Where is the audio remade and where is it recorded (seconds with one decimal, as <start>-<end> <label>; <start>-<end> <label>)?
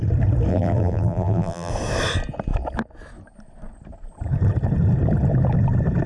0.0-0.5 recorded; 0.5-1.7 remade; 1.7-6.1 recorded